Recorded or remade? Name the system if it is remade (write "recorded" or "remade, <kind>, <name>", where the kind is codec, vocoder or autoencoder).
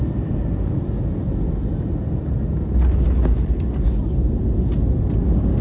recorded